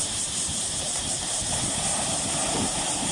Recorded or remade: remade